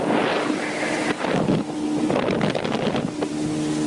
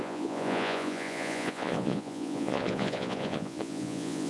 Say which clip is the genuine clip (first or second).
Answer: first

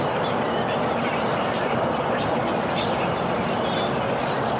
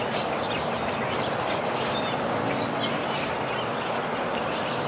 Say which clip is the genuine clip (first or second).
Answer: first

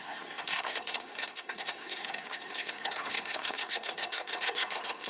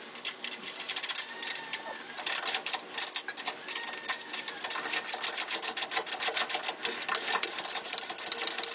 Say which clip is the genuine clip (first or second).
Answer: second